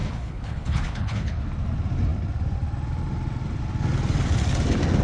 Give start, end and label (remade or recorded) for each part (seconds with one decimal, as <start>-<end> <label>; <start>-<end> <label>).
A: 0.0-1.4 remade; 1.4-5.0 recorded